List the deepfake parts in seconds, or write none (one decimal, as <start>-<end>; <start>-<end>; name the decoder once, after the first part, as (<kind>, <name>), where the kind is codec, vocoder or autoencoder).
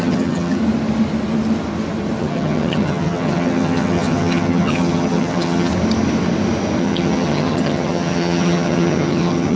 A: 0.0-0.6 (vocoder, HiFi-GAN); 2.2-5.7; 6.8-9.6